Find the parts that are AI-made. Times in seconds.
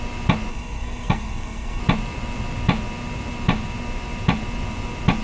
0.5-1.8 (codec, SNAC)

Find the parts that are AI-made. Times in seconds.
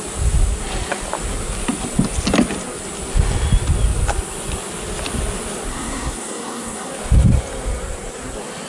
5.7-6.9 (codec, SNAC)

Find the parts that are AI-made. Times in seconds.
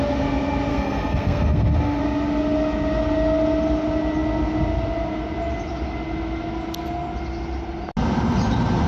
0.7-2.0 (codec, SNAC)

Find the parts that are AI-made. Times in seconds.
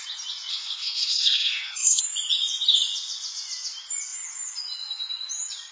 0.5-2.0 (codec, SNAC)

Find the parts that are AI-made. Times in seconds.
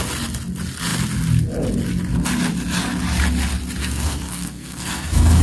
3.8-5.4 (codec, SNAC)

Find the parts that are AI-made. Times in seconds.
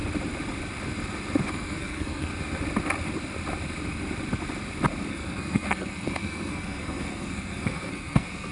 1.5-2.3 (codec, SNAC); 5.1-8.5